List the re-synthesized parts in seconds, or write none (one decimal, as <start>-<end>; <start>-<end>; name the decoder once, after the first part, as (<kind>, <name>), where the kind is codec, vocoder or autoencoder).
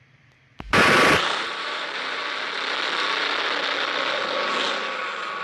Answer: 0.0-2.2 (vocoder, BigVGAN v2)